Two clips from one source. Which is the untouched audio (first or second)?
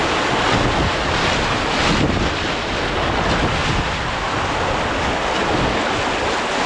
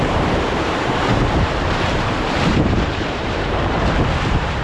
first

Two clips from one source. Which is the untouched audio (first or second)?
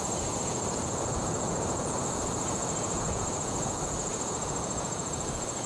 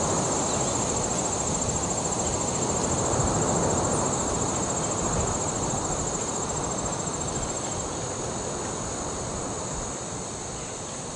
second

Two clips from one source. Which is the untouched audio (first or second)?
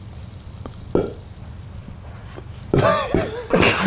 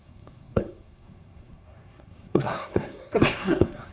first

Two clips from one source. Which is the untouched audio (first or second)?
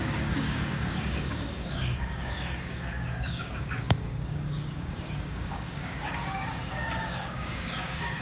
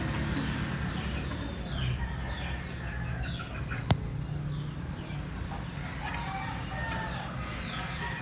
second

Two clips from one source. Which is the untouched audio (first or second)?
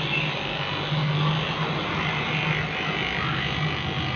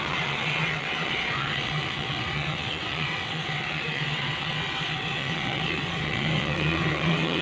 first